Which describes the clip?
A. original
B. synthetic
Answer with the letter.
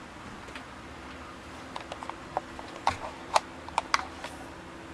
A